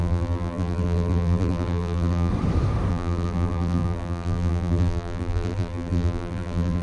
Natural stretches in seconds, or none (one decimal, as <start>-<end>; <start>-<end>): 2.3-2.9